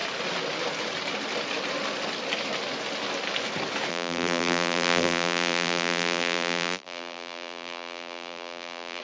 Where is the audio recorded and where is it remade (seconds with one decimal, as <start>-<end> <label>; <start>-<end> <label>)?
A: 0.0-3.9 recorded; 3.9-9.0 remade